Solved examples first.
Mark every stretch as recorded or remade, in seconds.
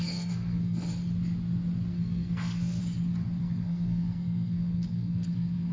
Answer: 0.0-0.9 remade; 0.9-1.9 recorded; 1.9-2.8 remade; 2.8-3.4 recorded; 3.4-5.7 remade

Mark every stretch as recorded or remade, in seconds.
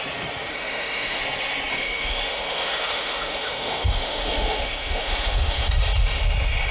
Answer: 0.0-0.5 recorded; 0.5-1.2 remade; 1.2-1.7 recorded; 1.7-5.7 remade; 5.7-6.7 recorded